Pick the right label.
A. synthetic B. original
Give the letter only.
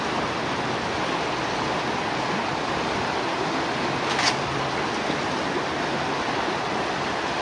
B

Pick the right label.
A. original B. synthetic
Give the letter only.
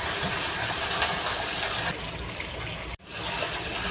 A